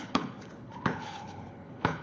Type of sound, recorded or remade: remade